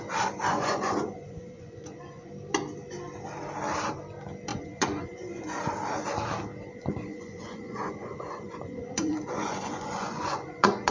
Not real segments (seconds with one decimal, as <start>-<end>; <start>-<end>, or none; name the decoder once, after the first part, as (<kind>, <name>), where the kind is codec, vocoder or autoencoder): 0.5-2.3 (vocoder, Vocos); 4.5-5.6; 6.8-10.9